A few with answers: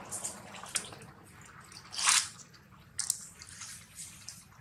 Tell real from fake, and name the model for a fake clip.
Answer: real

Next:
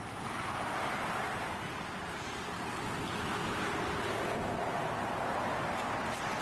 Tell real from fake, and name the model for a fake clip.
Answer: real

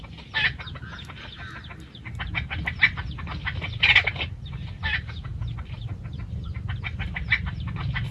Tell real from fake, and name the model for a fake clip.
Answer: real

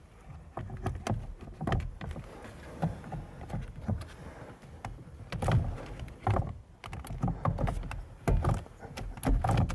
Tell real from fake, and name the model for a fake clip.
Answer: real